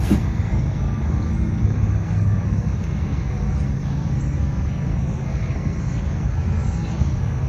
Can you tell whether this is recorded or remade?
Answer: remade